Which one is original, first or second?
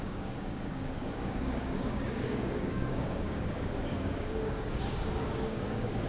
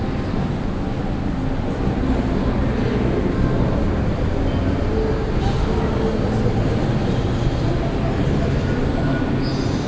second